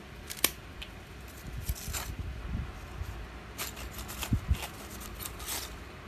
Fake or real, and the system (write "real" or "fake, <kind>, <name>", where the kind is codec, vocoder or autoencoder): real